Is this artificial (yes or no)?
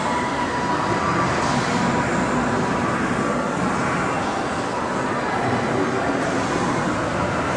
no